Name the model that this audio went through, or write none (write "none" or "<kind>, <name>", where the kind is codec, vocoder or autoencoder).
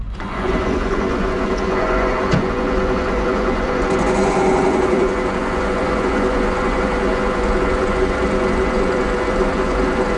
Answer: vocoder, Vocos